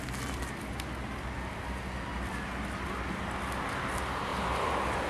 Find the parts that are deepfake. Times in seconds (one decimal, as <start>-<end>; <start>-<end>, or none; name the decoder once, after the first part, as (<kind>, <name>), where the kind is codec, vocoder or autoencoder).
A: none